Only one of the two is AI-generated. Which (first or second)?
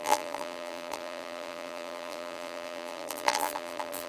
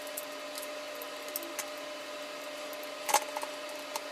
first